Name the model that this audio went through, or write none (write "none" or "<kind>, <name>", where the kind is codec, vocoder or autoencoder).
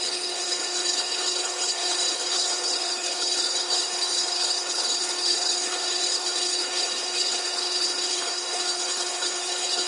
codec, HILCodec